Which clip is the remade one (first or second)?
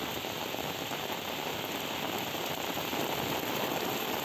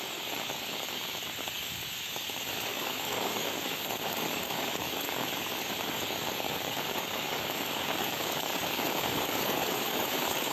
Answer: second